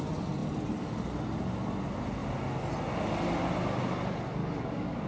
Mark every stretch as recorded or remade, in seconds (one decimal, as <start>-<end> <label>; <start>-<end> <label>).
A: 0.0-4.4 recorded; 4.4-5.1 remade